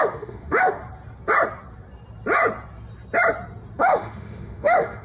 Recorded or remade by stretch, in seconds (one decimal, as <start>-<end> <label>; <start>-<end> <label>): 0.0-0.8 remade; 0.8-3.8 recorded; 3.8-5.0 remade